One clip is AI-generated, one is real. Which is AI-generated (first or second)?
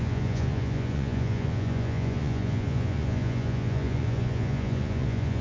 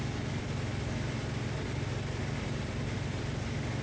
first